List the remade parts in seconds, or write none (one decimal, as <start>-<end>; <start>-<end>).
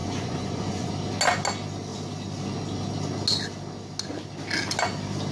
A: 0.0-0.9